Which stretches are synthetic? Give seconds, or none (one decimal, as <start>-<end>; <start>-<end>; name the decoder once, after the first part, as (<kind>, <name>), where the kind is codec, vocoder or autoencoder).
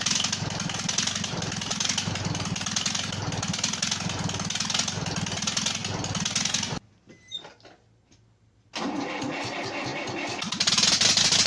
none